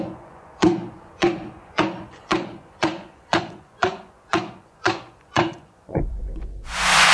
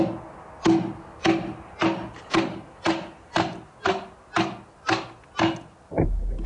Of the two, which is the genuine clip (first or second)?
second